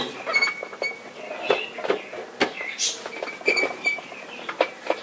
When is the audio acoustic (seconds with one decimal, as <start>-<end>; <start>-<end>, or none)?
0.6-3.6